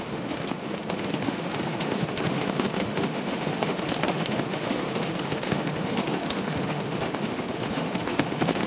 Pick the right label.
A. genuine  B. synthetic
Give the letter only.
B